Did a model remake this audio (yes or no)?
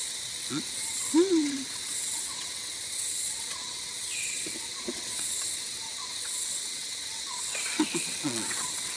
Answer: yes